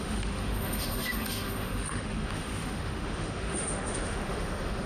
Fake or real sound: fake